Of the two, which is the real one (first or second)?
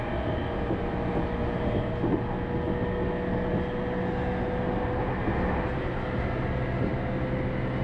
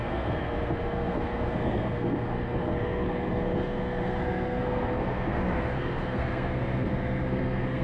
first